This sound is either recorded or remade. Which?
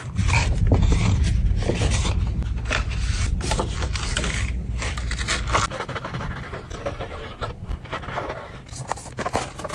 recorded